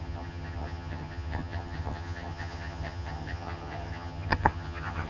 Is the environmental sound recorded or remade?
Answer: remade